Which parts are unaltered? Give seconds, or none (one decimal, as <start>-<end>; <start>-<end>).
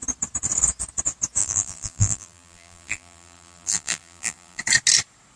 0.0-1.4; 4.6-5.4